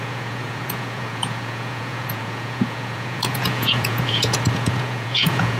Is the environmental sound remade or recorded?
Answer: remade